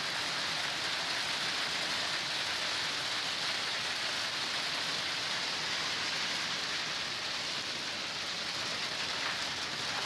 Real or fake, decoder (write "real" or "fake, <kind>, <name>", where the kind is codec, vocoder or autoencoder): real